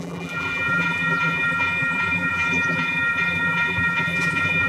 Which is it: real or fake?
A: fake